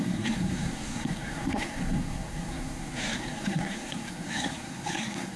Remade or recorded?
remade